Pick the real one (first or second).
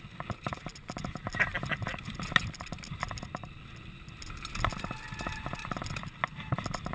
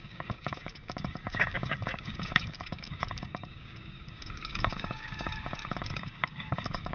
first